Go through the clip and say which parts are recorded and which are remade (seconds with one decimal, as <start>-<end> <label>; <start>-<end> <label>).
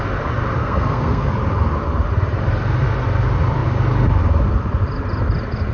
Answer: 0.0-0.6 recorded; 0.6-1.3 remade; 1.3-5.7 recorded